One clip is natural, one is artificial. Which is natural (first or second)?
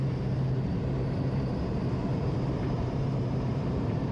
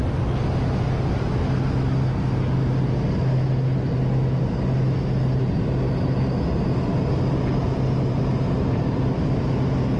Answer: second